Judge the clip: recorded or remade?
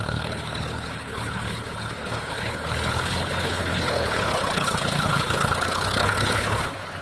remade